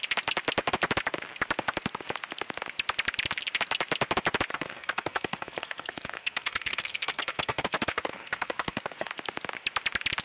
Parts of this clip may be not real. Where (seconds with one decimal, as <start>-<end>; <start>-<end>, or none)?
4.5-9.1